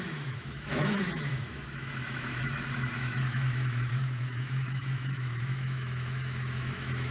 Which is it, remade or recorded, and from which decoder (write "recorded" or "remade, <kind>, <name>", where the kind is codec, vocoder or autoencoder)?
remade, autoencoder, DAC-VAE